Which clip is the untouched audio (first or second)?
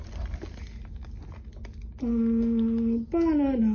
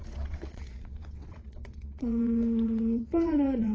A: first